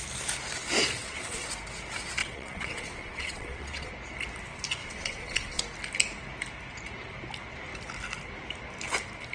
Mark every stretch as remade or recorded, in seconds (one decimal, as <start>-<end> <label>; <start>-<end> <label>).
0.0-1.0 recorded; 1.0-1.5 remade; 1.5-2.2 recorded; 2.2-3.9 remade; 3.9-4.8 recorded; 4.8-5.6 remade; 5.6-9.3 recorded